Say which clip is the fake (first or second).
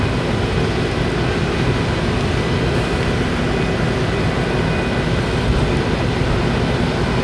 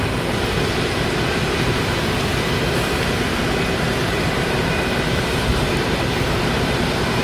second